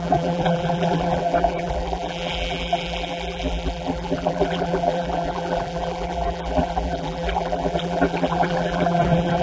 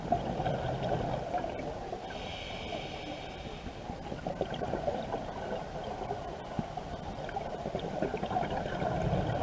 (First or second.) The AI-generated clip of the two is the first